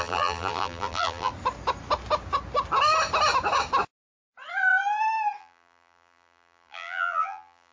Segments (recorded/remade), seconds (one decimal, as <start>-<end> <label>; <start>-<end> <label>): 0.0-1.3 remade; 1.3-5.4 recorded; 5.4-7.7 remade